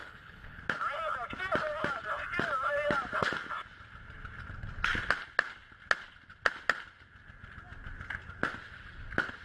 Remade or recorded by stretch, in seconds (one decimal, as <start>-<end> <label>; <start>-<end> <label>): 0.0-0.6 remade; 0.6-9.4 recorded